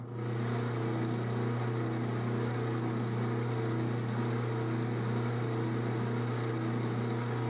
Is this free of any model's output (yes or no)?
yes